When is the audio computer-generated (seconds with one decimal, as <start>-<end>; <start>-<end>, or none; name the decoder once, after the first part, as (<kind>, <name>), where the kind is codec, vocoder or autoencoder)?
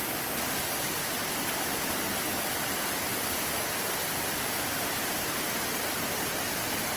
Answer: none